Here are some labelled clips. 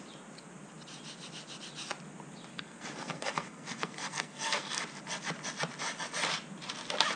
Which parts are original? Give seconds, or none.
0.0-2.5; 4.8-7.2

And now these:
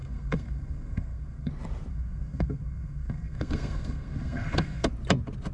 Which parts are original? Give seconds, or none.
1.5-1.9; 4.9-5.5

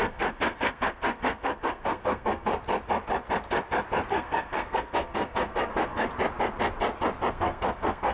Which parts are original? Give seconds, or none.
2.5-4.1; 6.1-7.3

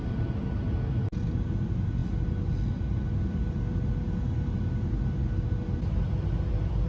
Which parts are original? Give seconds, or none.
0.0-6.9

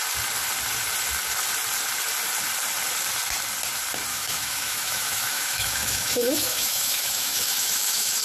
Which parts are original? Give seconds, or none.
0.0-4.1

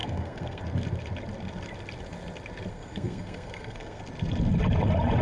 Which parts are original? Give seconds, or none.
0.6-2.7; 4.0-5.2

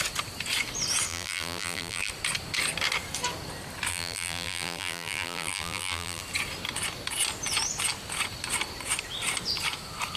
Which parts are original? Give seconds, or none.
0.0-1.1; 2.1-3.9; 6.2-10.2